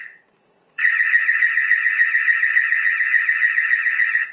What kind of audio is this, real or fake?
fake